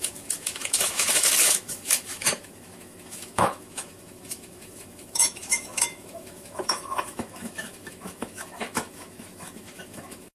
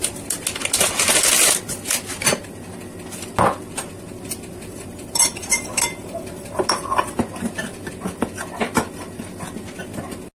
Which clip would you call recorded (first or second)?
second